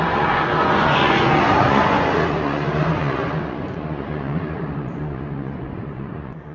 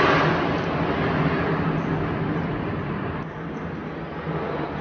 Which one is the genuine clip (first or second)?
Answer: second